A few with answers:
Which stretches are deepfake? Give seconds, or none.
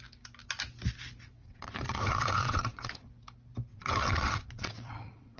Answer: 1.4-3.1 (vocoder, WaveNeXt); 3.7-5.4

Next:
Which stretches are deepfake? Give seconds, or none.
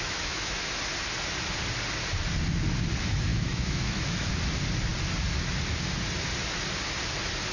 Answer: 0.0-0.6 (autoencoder, DAC-VAE); 3.3-4.3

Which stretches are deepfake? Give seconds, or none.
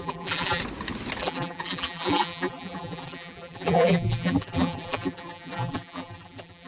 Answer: 0.0-0.6 (vocoder, BigVGAN v2); 1.2-6.7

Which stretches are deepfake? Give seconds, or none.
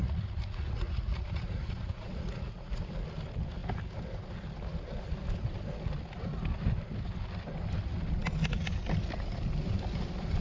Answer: 0.0-2.8 (vocoder, Vocos)